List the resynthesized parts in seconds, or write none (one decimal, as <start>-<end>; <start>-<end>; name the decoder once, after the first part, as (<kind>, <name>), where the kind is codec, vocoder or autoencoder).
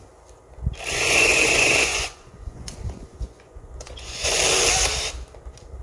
0.9-4.4 (vocoder, Vocos)